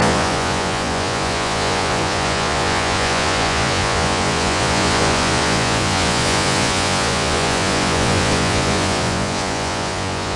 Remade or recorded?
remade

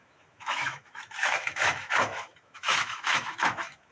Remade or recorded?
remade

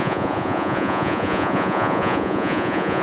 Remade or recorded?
remade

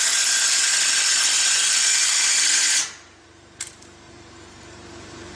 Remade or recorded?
remade